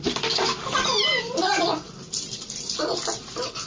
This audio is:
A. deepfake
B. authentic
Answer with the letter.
A